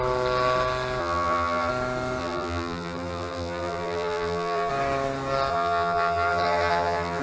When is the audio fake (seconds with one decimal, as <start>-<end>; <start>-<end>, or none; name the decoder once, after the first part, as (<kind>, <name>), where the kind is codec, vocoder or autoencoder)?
1.0-1.7 (vocoder, BigVGAN v2); 2.2-4.7; 5.5-7.2